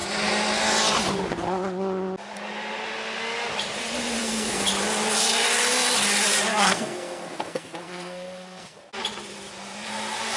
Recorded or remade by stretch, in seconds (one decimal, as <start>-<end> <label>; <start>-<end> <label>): 0.0-4.2 recorded; 4.2-4.7 remade; 4.7-6.5 recorded; 6.5-8.8 remade; 8.8-10.4 recorded